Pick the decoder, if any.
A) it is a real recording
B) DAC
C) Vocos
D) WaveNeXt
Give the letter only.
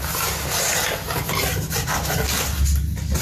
A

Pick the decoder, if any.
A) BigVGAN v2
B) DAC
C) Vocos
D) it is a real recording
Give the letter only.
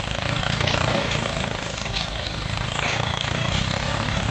B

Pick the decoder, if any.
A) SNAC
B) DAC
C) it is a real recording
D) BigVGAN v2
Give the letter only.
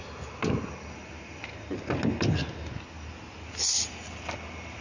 C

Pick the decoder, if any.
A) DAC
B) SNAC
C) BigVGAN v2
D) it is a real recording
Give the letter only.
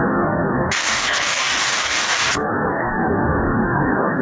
A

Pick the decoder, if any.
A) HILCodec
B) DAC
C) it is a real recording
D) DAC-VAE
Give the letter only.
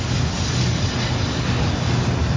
C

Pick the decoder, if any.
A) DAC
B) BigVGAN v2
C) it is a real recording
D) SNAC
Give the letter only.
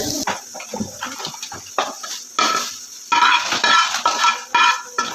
C